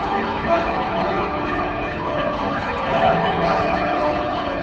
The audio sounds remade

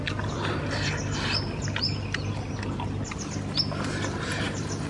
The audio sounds recorded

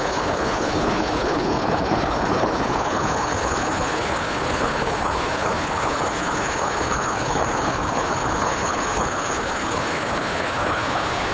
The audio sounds remade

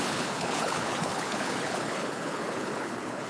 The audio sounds remade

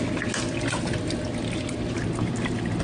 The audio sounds recorded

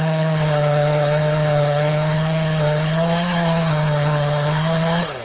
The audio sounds remade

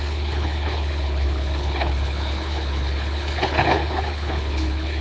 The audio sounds remade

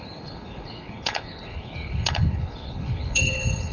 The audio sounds remade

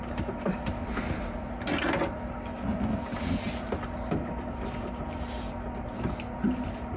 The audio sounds recorded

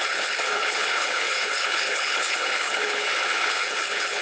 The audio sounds remade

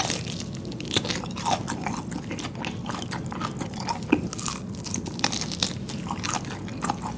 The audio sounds recorded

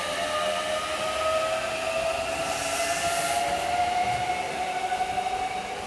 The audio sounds recorded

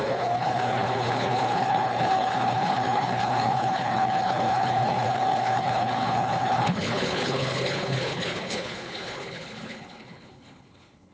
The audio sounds remade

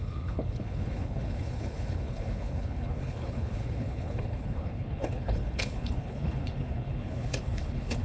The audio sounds remade